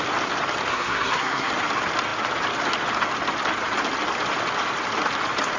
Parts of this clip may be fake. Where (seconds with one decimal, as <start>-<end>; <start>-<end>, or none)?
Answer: 0.7-1.5